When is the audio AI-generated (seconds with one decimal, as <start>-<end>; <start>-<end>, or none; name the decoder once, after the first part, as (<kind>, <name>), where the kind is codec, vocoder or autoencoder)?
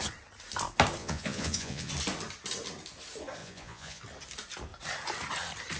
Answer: 1.0-1.9 (vocoder, Vocos); 3.4-4.0